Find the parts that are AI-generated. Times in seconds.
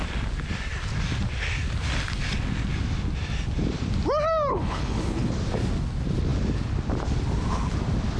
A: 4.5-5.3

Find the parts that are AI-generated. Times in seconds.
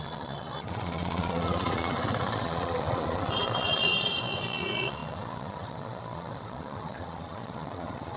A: 0.0-8.2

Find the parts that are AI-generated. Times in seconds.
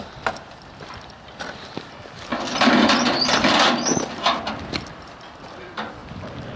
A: none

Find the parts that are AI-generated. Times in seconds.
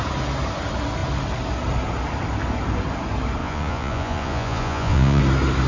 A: 3.4-5.2